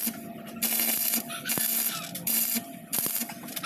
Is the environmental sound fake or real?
real